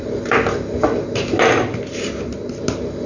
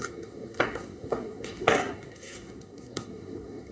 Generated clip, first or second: second